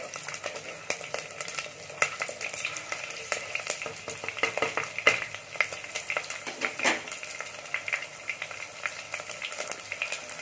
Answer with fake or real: real